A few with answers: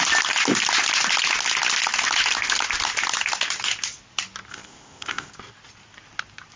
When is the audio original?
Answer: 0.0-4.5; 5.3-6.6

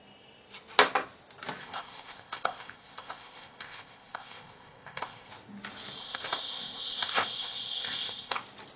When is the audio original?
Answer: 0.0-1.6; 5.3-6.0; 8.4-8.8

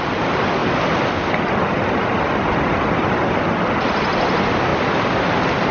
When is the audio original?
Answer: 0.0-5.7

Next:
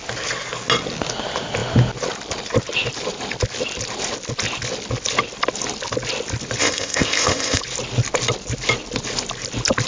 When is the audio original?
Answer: 0.0-6.6; 7.6-9.9

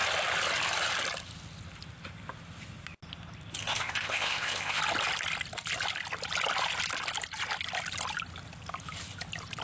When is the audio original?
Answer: 0.0-3.6; 4.8-9.6